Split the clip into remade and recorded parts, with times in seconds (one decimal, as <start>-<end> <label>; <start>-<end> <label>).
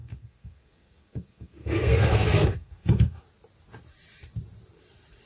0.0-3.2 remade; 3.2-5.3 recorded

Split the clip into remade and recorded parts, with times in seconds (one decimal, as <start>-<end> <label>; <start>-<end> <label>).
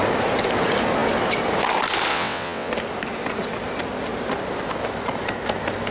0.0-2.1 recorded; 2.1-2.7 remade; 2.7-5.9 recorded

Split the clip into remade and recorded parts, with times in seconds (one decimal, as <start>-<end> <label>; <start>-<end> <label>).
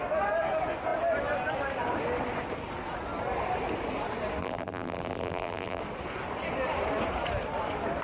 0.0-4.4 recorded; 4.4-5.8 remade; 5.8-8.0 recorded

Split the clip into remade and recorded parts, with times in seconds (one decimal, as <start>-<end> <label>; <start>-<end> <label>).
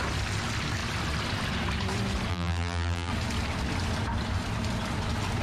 0.0-2.3 recorded; 2.3-3.1 remade; 3.1-5.4 recorded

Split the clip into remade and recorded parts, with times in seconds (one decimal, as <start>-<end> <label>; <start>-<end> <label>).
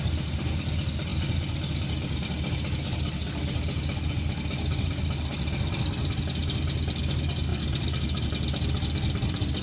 0.0-7.5 recorded; 7.5-8.3 remade; 8.3-9.6 recorded